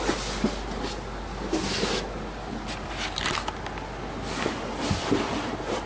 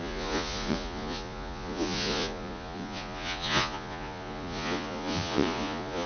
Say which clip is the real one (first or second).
first